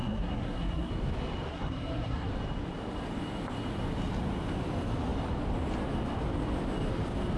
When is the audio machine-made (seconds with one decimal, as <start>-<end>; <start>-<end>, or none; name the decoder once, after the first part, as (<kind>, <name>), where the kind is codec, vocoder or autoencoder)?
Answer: 0.0-0.9 (codec, SNAC); 1.5-2.3